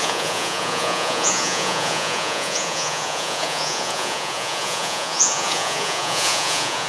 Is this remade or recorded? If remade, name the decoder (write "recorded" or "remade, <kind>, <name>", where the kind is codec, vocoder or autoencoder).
remade, vocoder, Vocos